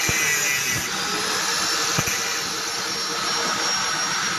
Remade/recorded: recorded